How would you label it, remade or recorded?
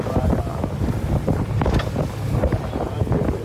recorded